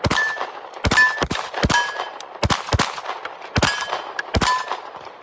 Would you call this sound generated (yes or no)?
no